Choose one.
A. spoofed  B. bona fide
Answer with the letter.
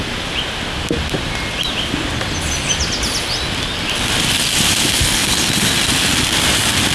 B